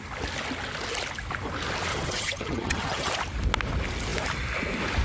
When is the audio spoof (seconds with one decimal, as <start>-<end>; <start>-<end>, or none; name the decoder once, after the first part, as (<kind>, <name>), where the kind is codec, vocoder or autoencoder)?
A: 1.9-3.1 (vocoder, HiFi-GAN)